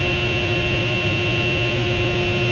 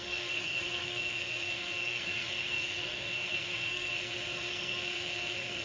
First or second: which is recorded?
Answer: first